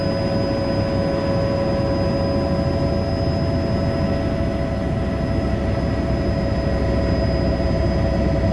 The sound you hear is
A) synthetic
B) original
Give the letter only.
B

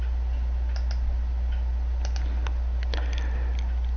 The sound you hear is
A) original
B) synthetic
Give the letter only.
A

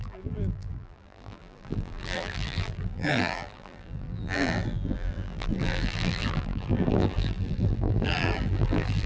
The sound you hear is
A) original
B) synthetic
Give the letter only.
B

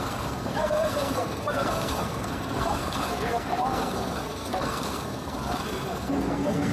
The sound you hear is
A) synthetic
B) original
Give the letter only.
A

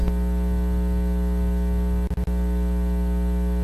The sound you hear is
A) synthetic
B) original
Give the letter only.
B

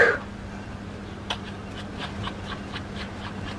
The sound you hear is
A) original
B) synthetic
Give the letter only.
A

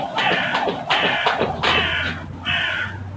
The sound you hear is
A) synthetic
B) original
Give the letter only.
B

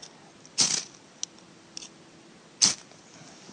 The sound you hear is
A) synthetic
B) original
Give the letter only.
B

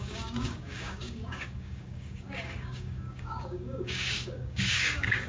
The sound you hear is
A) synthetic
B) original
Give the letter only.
A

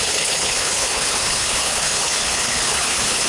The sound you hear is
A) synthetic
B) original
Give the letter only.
A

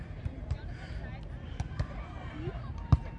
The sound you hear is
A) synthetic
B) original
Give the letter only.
A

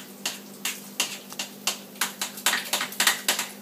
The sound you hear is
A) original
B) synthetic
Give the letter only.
A